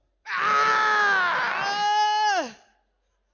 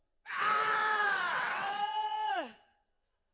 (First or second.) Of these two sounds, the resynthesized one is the second